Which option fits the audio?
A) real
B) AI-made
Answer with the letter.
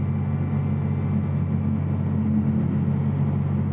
A